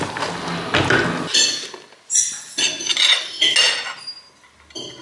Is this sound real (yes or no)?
yes